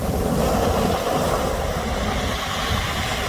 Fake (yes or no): no